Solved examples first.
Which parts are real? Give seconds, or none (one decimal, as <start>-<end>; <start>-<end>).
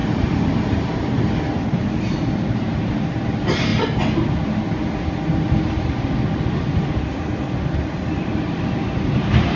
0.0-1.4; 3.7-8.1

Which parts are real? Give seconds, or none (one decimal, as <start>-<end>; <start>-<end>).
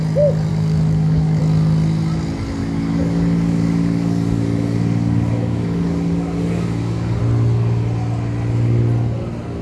0.0-0.5; 1.4-2.6; 7.2-9.6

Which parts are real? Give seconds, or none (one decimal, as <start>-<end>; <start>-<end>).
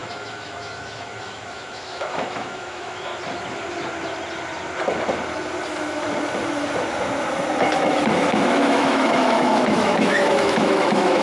3.1-7.8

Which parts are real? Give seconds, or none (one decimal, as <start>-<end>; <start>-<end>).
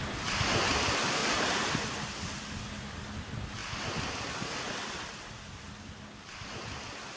0.0-1.2; 2.1-7.2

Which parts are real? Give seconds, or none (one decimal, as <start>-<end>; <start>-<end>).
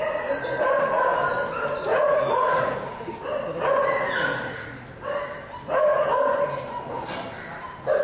0.0-1.9; 3.0-3.8; 4.7-8.0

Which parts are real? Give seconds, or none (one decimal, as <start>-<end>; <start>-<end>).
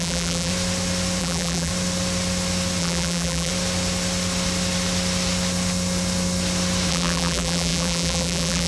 0.5-1.2; 1.7-2.8; 3.5-6.9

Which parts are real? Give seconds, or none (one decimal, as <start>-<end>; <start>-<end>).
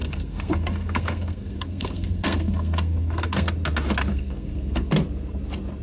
3.5-4.1; 4.9-5.8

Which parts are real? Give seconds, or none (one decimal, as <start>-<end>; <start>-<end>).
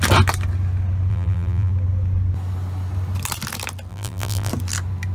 0.0-1.1; 1.7-3.9; 4.5-5.1